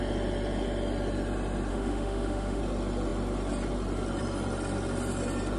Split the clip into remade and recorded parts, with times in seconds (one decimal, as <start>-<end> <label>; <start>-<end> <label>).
0.0-1.7 recorded; 1.7-2.6 remade; 2.6-5.6 recorded